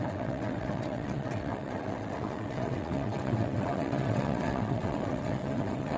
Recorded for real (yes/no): no